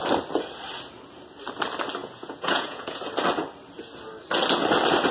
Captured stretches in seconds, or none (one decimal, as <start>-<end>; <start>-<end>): 0.0-2.0; 3.0-5.1